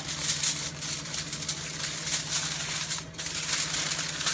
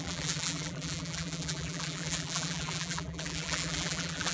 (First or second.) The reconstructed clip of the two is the second